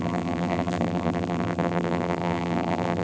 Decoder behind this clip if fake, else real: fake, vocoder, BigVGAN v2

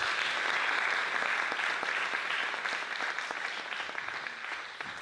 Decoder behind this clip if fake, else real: real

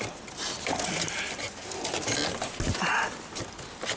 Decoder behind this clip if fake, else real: real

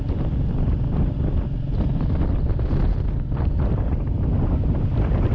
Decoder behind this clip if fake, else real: real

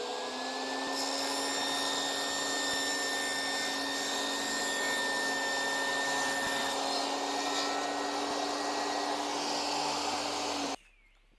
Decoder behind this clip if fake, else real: real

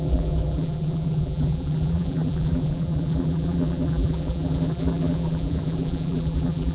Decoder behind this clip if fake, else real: fake, vocoder, BigVGAN v2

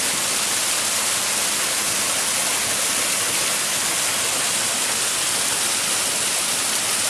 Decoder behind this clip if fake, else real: real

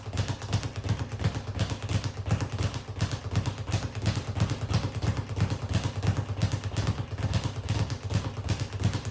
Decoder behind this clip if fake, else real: real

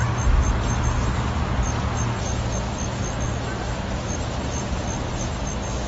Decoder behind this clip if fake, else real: real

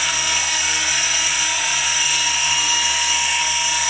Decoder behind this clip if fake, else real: fake, codec, SNAC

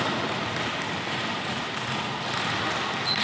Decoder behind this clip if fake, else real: real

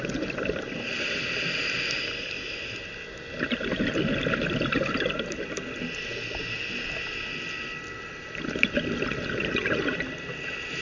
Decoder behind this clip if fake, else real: real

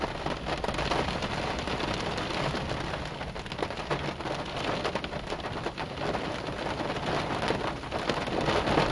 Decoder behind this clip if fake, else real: real